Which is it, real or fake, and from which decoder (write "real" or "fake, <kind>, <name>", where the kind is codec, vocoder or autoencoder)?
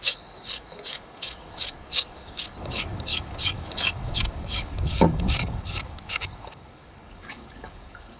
fake, codec, DAC